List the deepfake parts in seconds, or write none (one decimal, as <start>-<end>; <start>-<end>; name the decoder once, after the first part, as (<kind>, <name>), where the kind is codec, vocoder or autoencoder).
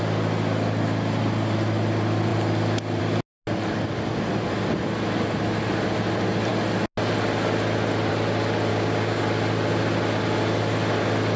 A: 8.7-9.2 (codec, DAC)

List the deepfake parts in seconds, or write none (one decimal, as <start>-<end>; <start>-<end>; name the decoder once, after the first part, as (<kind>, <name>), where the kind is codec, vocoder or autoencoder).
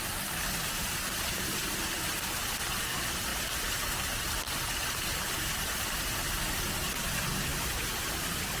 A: 3.3-5.6 (vocoder, BigVGAN v2)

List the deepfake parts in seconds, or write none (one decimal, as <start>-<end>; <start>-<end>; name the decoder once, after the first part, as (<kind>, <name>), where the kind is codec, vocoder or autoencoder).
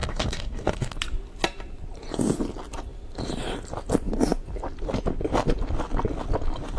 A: 0.0-0.9 (codec, DAC)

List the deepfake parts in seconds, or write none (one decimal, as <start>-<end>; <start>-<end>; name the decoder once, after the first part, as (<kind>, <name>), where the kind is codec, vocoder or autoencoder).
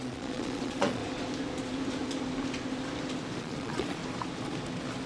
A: 0.0-1.0 (vocoder, Vocos); 3.4-4.0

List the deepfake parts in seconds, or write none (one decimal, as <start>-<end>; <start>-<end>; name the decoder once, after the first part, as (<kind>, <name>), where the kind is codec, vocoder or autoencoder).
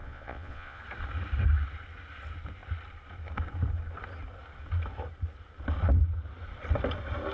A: 0.0-0.8 (vocoder, Vocos)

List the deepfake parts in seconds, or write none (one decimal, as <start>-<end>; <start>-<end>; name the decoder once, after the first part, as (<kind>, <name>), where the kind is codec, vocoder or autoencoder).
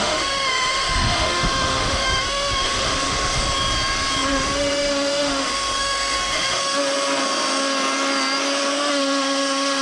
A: 0.0-3.4 (autoencoder, DAC-VAE); 4.3-6.8; 8.9-9.8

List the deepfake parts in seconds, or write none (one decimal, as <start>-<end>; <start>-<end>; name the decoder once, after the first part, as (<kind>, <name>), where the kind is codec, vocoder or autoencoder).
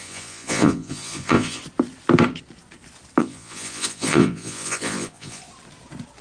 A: 0.0-1.6 (vocoder, Vocos); 3.2-5.4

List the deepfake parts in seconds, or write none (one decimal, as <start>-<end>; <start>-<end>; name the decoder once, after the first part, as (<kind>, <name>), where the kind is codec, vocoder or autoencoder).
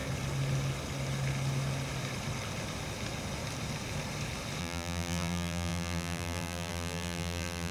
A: 4.6-7.7 (vocoder, BigVGAN v2)